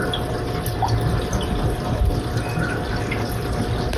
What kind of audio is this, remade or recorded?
recorded